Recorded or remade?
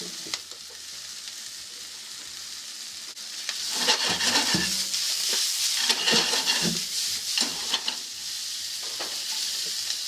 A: recorded